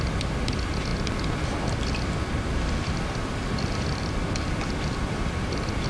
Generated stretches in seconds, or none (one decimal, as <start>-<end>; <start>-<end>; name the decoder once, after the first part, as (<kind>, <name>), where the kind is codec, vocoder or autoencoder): none